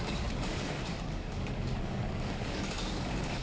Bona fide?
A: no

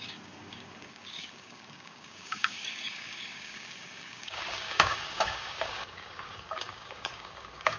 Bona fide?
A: no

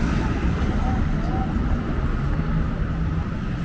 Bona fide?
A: yes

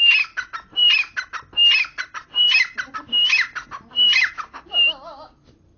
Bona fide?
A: yes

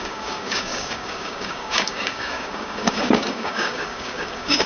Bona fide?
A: no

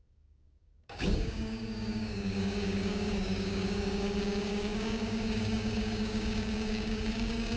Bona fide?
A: no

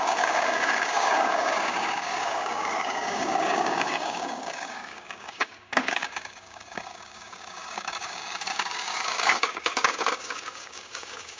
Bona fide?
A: no